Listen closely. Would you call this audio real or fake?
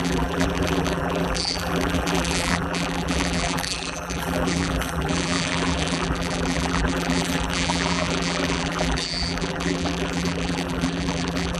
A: fake